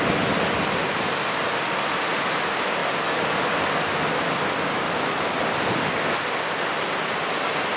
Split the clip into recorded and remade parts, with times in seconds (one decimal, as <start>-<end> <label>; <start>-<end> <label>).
0.0-7.8 recorded